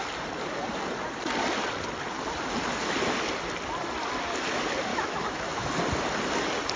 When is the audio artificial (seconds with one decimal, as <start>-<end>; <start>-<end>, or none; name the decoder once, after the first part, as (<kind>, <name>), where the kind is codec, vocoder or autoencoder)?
4.9-5.7 (autoencoder, DAC-VAE)